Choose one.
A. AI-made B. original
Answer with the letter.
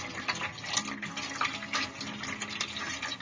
B